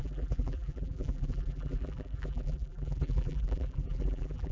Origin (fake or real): fake